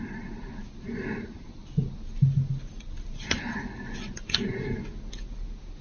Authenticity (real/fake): real